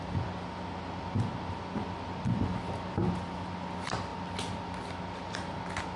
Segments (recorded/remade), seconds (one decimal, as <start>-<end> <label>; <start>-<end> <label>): 0.0-6.0 recorded